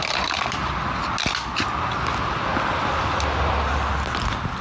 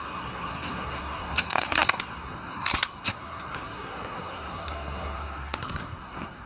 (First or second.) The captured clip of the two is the first